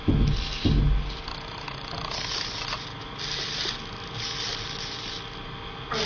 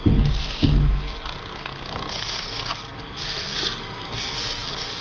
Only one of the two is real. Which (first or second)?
first